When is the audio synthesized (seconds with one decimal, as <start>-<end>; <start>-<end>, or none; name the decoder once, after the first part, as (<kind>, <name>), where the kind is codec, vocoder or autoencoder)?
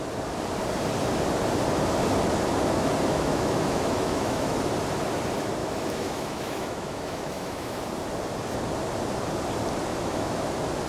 3.1-4.6 (autoencoder, DAC-VAE); 5.6-7.8; 9.9-10.5